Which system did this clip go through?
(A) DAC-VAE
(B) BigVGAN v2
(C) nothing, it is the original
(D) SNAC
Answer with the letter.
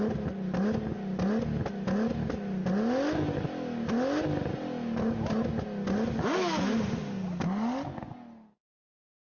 C